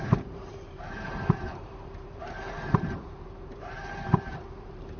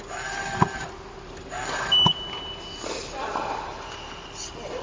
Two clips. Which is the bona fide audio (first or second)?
second